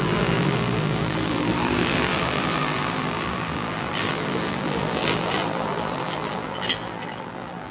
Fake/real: fake